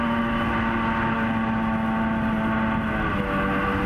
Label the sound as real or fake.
real